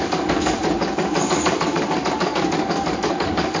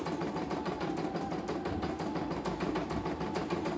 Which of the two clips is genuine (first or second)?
second